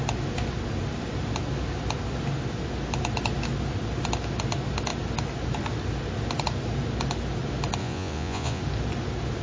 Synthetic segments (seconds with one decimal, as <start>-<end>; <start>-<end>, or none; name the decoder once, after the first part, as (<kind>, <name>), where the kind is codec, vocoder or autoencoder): 7.8-8.6 (vocoder, Vocos)